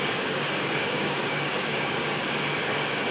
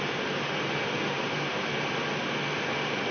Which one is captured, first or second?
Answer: second